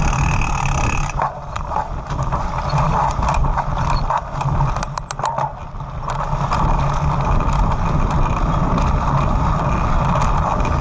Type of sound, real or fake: real